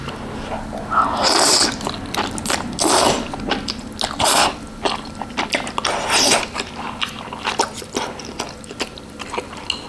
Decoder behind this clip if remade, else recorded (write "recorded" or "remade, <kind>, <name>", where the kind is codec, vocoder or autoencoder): recorded